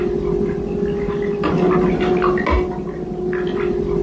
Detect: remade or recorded recorded